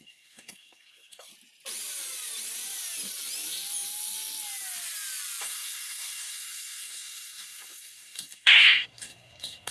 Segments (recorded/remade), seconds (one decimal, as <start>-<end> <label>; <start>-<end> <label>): 0.0-1.3 remade; 1.3-5.4 recorded; 5.4-9.7 remade